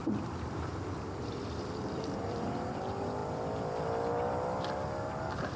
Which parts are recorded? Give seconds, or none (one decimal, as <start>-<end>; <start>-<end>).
2.8-5.6